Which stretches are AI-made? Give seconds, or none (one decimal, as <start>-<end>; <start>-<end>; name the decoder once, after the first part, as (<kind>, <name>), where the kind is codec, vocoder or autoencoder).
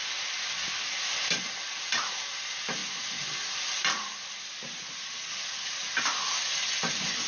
none